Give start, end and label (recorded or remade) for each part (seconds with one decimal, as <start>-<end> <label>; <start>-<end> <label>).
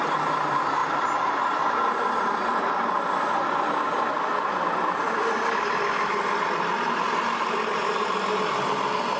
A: 0.0-9.2 recorded